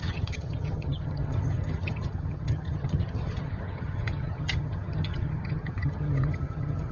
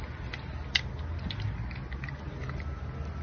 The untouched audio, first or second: second